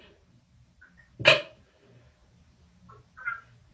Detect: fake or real real